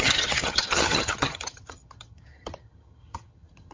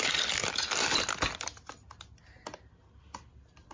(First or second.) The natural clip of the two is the second